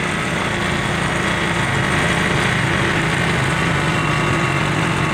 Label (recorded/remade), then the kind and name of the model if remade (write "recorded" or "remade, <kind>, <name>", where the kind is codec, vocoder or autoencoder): recorded